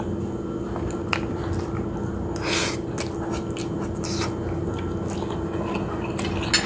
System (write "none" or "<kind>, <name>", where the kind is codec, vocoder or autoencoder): none